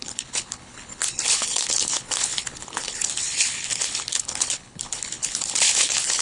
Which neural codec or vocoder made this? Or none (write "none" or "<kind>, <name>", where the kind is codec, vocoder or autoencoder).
codec, HILCodec